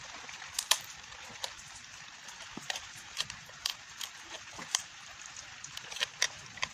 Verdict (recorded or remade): remade